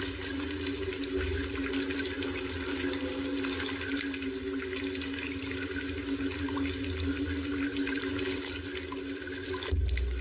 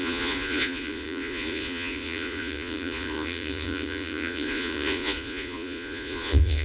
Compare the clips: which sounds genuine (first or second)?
first